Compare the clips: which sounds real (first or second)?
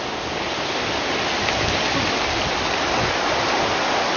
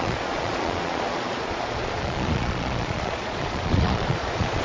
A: first